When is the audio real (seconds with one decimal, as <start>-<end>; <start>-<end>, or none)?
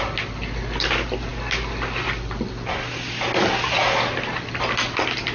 0.0-5.3